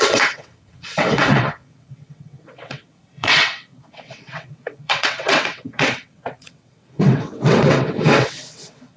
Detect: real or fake fake